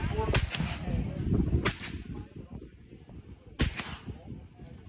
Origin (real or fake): real